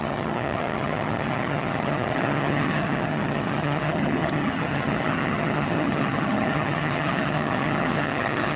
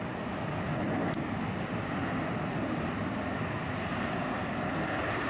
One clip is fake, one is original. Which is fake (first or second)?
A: first